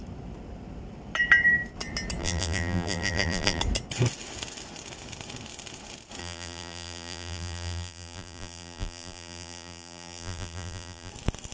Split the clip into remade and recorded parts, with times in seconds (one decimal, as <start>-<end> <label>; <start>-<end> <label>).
0.0-2.2 recorded; 2.2-3.6 remade; 3.6-6.2 recorded; 6.2-11.1 remade; 11.1-11.5 recorded